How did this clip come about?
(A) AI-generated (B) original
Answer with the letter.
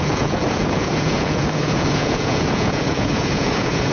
A